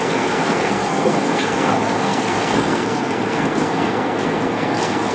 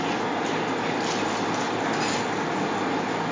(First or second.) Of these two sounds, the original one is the second